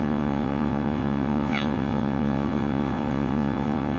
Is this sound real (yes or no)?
no